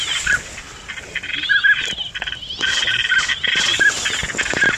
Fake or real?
real